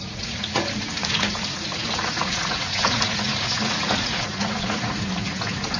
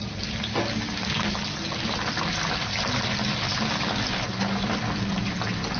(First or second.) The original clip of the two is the second